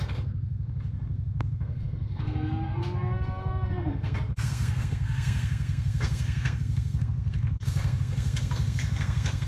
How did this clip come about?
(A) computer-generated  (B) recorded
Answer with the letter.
A